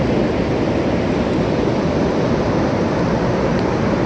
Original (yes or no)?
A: yes